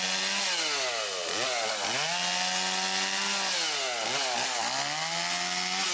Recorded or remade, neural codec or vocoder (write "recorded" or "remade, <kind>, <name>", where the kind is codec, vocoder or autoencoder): recorded